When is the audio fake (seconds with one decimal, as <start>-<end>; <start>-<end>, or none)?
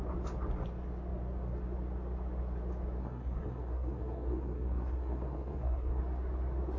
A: 3.0-6.0